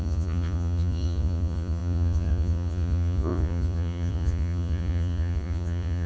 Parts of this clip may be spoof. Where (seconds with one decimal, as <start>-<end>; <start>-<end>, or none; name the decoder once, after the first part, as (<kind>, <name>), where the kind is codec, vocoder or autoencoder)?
0.0-6.1 (vocoder, Vocos)